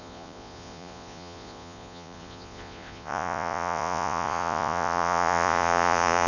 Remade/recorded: remade